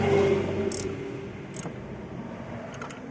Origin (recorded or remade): recorded